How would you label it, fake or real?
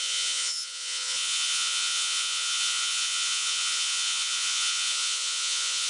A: fake